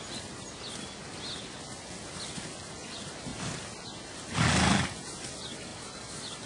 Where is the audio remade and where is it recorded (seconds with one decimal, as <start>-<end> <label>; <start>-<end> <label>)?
0.0-6.5 recorded